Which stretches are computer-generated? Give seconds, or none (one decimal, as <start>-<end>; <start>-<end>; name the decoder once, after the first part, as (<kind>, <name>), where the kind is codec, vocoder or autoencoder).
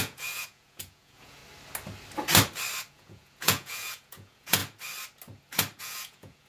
0.0-1.4 (vocoder, Vocos); 2.9-4.6; 5.8-6.5